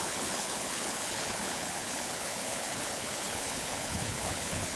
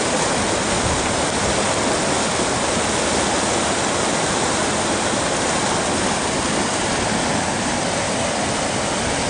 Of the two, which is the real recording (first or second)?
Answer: second